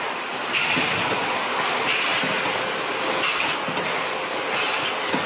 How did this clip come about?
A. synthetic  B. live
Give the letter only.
B